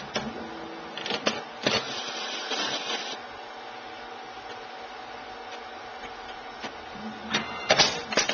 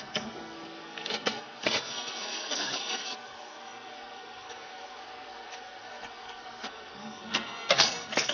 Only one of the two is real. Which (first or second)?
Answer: first